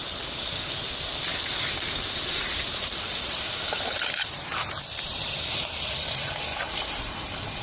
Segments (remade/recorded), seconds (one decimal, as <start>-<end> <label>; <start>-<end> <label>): 0.0-1.3 recorded; 1.3-5.9 remade; 5.9-6.5 recorded; 6.5-7.1 remade; 7.1-7.6 recorded